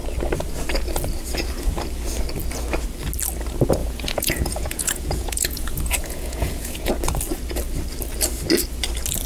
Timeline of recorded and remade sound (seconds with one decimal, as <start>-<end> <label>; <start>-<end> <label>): 0.0-3.8 recorded; 3.8-6.9 remade; 6.9-9.3 recorded